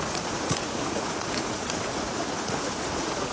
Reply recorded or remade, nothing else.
remade